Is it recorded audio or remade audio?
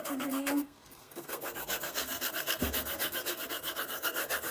remade